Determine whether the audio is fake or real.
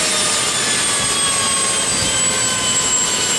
real